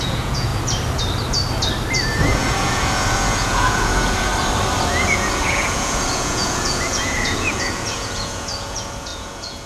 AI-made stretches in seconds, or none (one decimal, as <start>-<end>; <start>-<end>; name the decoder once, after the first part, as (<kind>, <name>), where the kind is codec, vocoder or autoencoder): 0.0-0.5 (vocoder, Vocos); 2.2-4.3; 4.9-9.7